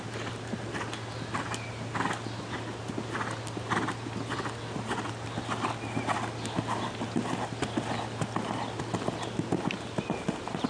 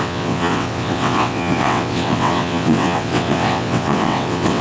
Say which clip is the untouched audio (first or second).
first